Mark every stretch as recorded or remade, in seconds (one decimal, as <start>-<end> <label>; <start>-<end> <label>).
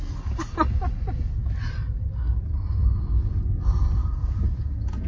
0.0-4.0 recorded; 4.0-5.1 remade